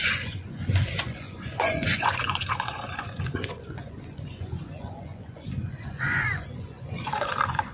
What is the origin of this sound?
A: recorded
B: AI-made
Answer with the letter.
B